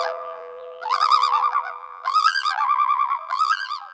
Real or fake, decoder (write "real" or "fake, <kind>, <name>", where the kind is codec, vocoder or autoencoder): fake, vocoder, BigVGAN v2